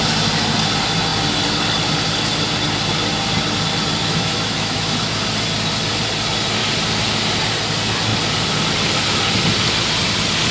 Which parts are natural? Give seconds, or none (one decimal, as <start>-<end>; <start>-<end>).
0.0-4.0; 5.2-10.5